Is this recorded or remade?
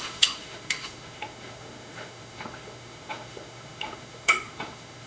remade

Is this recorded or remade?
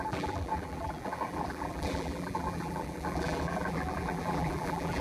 remade